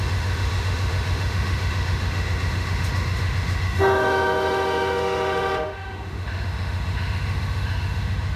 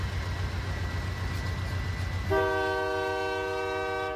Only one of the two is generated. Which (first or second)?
first